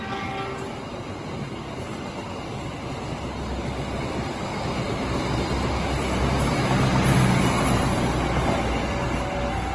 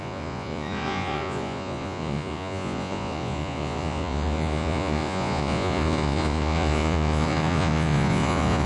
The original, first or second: first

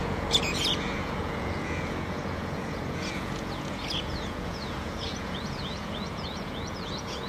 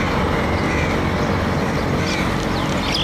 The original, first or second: second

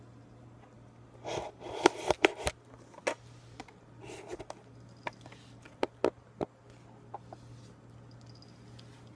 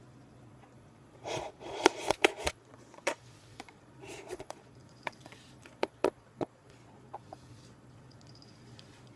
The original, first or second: first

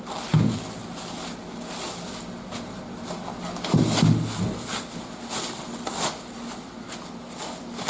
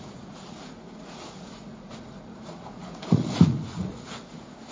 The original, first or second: first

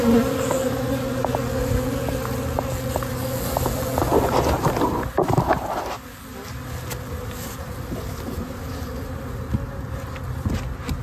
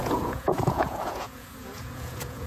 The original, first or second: first